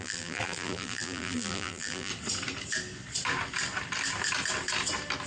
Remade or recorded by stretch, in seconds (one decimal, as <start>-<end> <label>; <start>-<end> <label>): 0.0-2.1 remade; 2.1-5.3 recorded